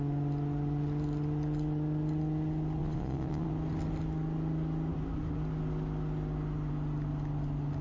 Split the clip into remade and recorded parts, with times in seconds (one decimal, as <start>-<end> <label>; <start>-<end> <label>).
0.0-2.8 recorded; 2.8-3.5 remade; 3.5-7.8 recorded